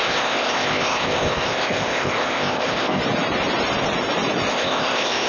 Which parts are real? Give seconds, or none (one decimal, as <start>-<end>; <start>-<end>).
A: 3.0-4.5